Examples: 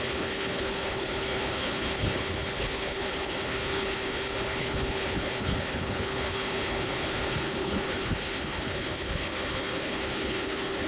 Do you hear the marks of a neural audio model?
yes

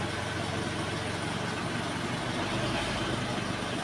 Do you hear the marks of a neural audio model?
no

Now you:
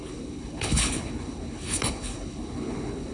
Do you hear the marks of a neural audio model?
yes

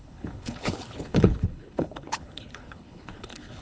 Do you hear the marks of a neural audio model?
yes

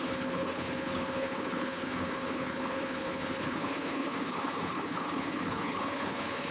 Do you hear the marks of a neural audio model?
yes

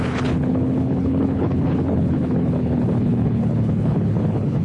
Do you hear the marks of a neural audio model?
yes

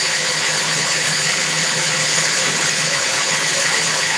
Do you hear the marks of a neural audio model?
yes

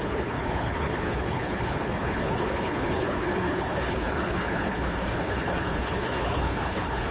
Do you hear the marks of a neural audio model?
yes